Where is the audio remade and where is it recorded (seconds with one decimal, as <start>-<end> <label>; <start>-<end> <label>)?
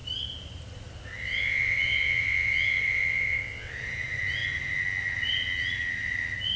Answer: 0.0-1.2 recorded; 1.2-3.7 remade; 3.7-6.6 recorded